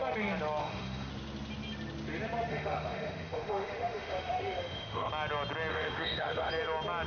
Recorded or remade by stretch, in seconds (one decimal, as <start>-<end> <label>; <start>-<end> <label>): 0.0-0.6 recorded; 0.6-1.1 remade; 1.1-2.5 recorded; 2.5-5.1 remade; 5.1-5.7 recorded; 5.7-6.5 remade; 6.5-7.1 recorded